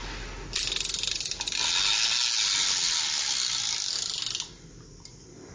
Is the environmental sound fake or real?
real